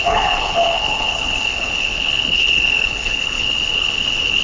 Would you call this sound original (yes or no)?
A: no